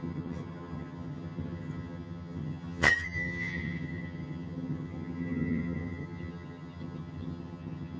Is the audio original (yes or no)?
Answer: no